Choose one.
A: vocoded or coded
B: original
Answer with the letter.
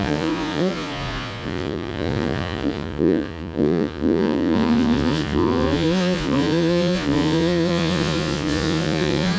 A